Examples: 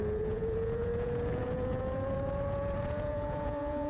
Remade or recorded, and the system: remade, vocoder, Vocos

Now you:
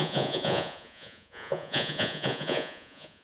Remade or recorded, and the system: remade, vocoder, Vocos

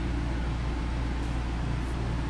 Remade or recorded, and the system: recorded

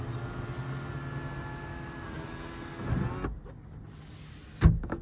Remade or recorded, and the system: recorded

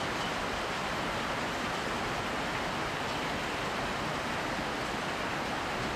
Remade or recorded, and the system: recorded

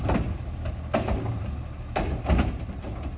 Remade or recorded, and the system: recorded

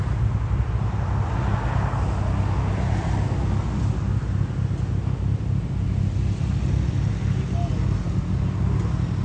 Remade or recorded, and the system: recorded